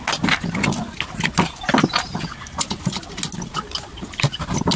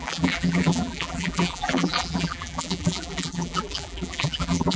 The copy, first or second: second